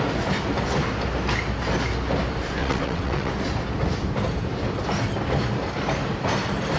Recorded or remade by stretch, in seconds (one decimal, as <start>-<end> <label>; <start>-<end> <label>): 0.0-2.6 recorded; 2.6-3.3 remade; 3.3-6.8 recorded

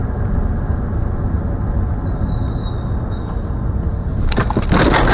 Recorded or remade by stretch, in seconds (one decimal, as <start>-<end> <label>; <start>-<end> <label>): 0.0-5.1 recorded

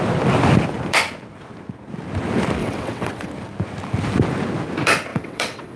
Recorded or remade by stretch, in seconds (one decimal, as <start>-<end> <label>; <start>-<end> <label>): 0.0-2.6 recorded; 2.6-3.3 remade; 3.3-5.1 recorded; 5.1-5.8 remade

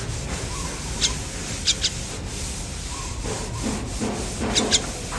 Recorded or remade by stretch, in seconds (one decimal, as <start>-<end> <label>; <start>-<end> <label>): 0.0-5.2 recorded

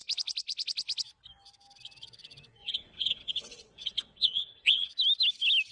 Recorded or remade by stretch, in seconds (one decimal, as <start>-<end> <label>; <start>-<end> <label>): 0.0-2.6 recorded; 2.6-4.9 remade; 4.9-5.7 recorded

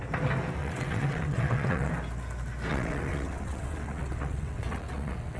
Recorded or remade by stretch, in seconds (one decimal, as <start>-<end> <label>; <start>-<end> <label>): 0.0-0.6 recorded; 0.6-1.9 remade; 1.9-2.7 recorded; 2.7-5.4 remade

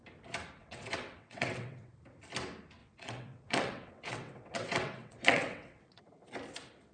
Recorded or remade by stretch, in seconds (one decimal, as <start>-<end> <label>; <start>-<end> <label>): 0.0-0.6 recorded; 0.6-1.9 remade; 1.9-2.8 recorded; 2.8-6.0 remade; 6.0-6.9 recorded

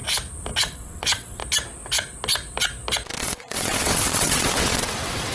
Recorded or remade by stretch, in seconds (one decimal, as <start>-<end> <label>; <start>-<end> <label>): 0.0-0.6 recorded; 0.6-1.4 remade; 1.4-3.2 recorded; 3.2-5.3 remade